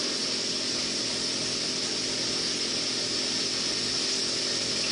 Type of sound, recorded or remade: recorded